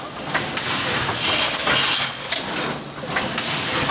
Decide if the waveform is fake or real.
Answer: real